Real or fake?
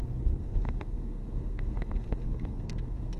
fake